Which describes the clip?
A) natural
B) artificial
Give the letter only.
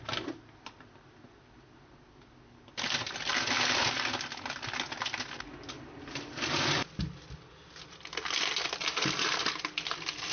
A